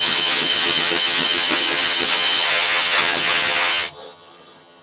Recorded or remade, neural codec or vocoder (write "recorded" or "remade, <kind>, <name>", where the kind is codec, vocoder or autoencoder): remade, vocoder, HiFi-GAN